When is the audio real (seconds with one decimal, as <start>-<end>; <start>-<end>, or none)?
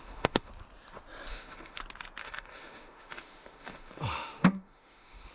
0.5-1.3; 1.8-2.2